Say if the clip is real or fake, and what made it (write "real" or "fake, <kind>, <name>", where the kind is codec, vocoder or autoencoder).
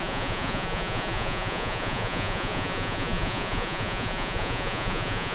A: fake, vocoder, Vocos